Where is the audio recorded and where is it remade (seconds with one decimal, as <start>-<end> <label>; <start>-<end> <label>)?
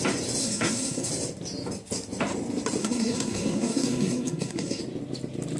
0.0-0.4 recorded; 0.4-1.1 remade; 1.1-2.8 recorded; 2.8-4.8 remade; 4.8-5.6 recorded